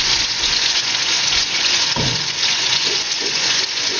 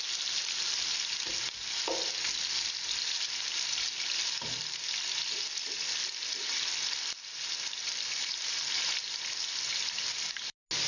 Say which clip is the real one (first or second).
second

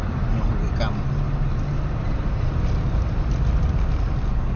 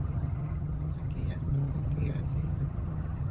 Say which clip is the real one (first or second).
first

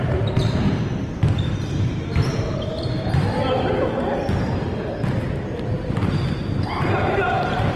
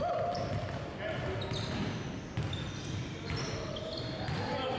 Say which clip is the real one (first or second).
second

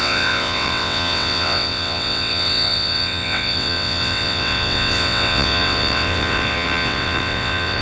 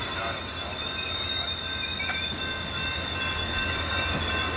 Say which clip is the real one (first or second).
second